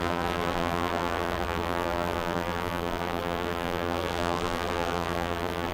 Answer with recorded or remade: remade